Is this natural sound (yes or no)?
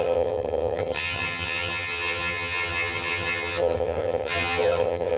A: no